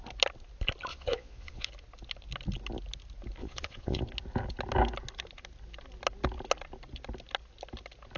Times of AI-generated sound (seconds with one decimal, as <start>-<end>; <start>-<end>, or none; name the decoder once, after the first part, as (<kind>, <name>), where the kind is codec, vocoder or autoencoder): 0.9-1.7 (vocoder, Vocos); 3.4-4.0

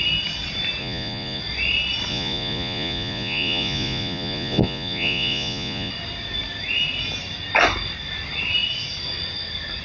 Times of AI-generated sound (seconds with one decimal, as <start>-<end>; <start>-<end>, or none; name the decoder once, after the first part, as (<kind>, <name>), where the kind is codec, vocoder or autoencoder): 0.8-1.4 (vocoder, Vocos); 2.1-5.9

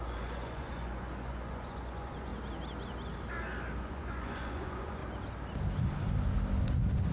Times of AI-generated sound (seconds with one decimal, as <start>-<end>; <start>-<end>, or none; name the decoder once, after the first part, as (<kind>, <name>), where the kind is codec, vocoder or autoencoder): 0.0-2.3 (vocoder, Vocos); 3.8-5.0

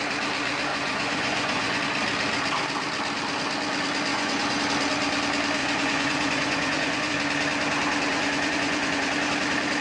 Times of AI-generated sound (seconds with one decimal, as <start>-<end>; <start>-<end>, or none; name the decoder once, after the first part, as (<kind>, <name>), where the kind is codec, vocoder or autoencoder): 0.7-1.8 (vocoder, Vocos); 4.1-4.6; 5.6-7.1; 8.1-9.1

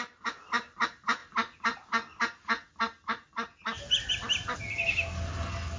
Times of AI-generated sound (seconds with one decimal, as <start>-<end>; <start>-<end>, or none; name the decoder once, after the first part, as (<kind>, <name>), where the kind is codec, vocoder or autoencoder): none

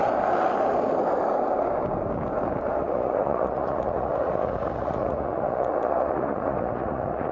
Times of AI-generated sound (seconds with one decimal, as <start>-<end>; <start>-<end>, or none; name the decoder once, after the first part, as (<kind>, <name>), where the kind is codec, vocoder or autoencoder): 2.8-7.3 (vocoder, Vocos)

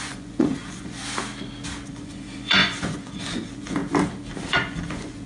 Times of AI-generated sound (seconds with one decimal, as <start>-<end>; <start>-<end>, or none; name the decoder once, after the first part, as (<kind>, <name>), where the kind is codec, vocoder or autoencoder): 0.0-1.0 (vocoder, Vocos); 1.9-3.8; 4.5-5.3

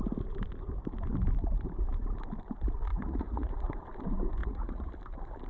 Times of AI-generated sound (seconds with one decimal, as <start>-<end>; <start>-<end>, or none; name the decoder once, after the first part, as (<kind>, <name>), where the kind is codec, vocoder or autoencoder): 2.9-3.7 (vocoder, Vocos); 4.4-4.9